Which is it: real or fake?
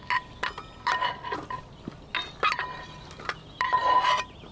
real